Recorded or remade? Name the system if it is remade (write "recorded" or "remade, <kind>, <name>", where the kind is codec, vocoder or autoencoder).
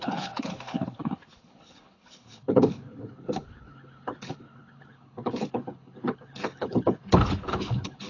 remade, codec, HILCodec